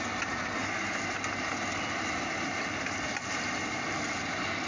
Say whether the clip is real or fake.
real